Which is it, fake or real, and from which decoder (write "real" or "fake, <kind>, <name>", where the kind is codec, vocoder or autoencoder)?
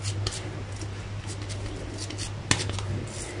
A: real